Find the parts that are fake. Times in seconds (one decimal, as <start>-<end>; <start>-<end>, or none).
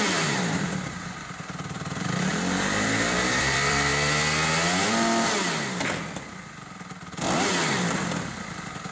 0.0-3.9; 7.7-8.9